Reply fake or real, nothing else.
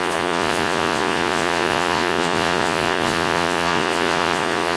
fake